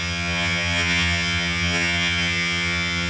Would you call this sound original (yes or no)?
no